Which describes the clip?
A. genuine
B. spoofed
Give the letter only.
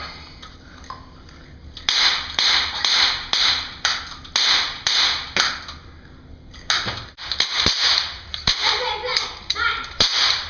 A